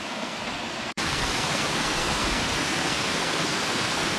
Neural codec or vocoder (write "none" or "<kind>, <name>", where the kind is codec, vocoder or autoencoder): codec, SNAC